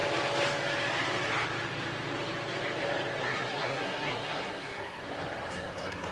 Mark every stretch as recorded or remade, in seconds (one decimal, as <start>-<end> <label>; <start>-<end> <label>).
0.0-3.2 recorded; 3.2-5.0 remade; 5.0-5.5 recorded; 5.5-6.1 remade